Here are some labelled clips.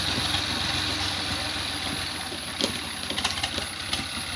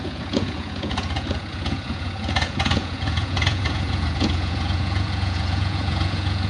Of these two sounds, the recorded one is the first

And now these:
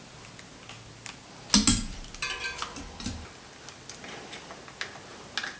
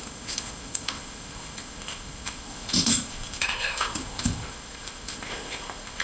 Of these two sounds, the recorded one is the first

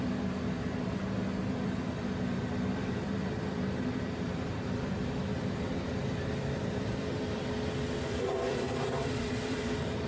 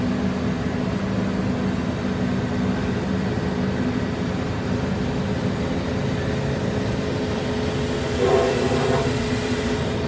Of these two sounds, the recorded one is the second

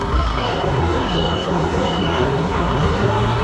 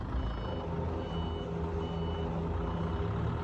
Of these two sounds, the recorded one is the second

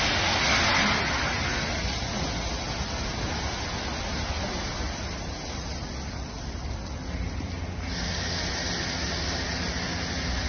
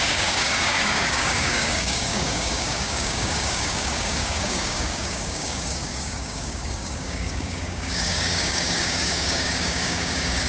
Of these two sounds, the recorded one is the first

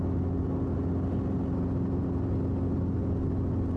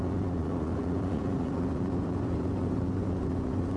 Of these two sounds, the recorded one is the first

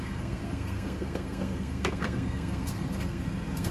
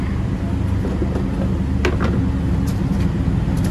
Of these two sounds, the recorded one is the second